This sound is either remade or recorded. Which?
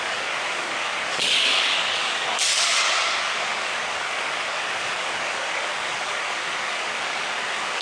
remade